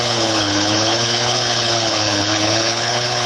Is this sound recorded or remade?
remade